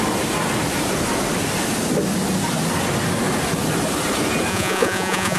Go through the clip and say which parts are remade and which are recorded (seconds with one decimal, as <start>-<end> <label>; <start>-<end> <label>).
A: 0.0-4.5 recorded; 4.5-5.4 remade